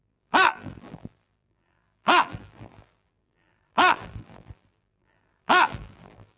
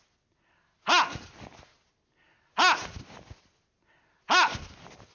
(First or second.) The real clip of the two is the second